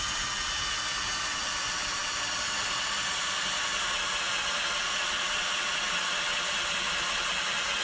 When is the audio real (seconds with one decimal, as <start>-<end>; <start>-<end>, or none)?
0.0-7.8